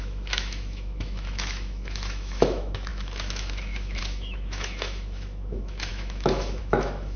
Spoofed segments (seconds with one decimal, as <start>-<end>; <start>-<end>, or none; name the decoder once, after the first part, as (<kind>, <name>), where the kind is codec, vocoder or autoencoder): 0.0-7.2 (autoencoder, DAC-VAE)